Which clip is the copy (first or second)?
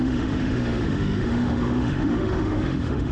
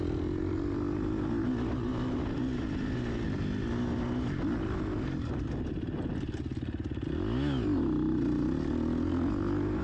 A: first